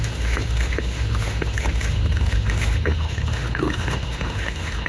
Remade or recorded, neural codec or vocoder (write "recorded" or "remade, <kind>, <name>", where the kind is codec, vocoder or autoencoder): remade, autoencoder, DAC-VAE